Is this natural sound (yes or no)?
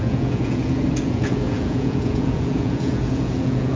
no